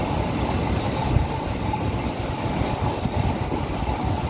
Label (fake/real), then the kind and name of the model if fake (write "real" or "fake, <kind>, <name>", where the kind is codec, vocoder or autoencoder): fake, vocoder, BigVGAN v2